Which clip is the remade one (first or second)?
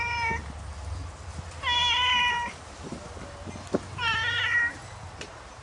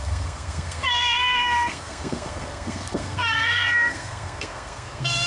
second